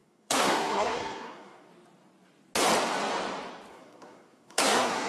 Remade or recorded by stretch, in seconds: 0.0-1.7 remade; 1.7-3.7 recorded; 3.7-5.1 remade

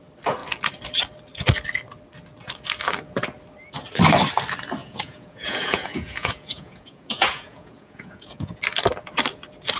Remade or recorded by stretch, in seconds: 0.0-4.8 recorded; 4.8-8.6 remade; 8.6-9.8 recorded

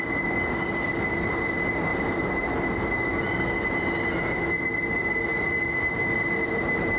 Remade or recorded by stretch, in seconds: 0.0-5.3 recorded; 5.3-6.6 remade; 6.6-7.0 recorded

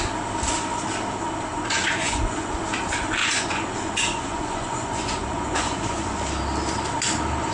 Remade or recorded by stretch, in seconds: 0.0-1.5 recorded; 1.5-2.6 remade; 2.6-3.2 recorded; 3.2-6.2 remade; 6.2-7.5 recorded